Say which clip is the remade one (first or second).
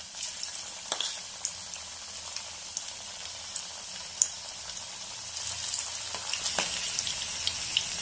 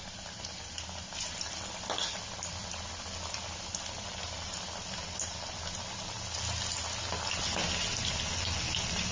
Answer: first